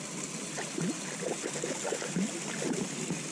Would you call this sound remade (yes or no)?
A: no